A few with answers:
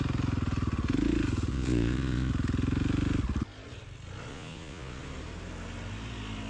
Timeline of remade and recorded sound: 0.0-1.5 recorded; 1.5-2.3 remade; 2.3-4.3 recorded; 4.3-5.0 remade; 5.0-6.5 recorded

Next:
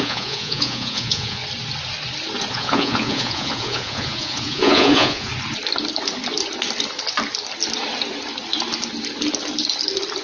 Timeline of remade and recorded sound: 0.0-1.4 remade; 1.4-2.5 recorded; 2.5-5.3 remade; 5.3-10.2 recorded

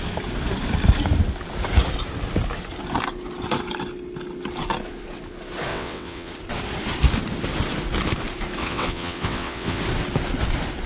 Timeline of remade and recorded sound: 0.0-5.7 recorded; 5.7-6.3 remade; 6.3-8.6 recorded; 8.6-9.8 remade; 9.8-10.9 recorded